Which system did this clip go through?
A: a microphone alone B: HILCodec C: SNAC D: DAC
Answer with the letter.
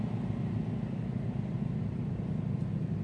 A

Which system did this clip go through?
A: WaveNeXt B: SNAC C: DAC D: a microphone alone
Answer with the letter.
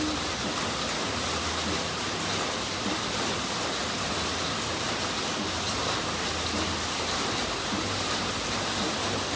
D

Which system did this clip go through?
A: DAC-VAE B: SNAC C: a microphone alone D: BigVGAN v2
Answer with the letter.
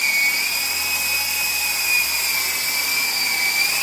C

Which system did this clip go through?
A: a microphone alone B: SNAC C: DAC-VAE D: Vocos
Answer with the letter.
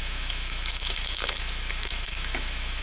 C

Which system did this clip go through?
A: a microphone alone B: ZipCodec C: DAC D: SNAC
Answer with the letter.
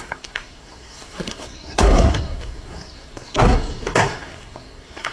D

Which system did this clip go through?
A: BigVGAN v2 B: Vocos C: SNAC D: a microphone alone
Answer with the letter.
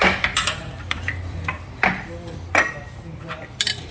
A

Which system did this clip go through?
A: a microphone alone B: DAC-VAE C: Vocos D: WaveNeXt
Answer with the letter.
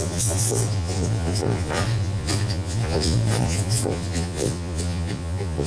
C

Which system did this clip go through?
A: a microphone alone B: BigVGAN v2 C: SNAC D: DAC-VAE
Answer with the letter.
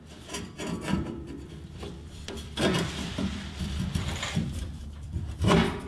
B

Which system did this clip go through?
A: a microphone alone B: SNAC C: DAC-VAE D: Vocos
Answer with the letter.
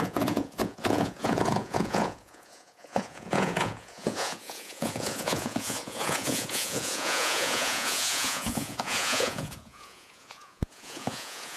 D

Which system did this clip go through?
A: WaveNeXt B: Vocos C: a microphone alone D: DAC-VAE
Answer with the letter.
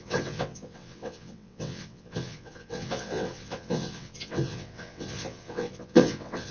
A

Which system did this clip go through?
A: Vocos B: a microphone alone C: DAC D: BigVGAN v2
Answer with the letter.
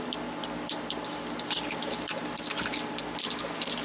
B